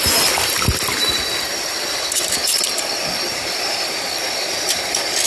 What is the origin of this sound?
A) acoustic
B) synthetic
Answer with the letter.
B